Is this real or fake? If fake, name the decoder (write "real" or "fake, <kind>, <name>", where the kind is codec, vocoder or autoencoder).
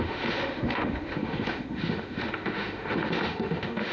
fake, autoencoder, DAC-VAE